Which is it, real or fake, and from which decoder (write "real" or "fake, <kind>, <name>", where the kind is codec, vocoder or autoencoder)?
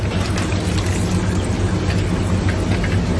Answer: real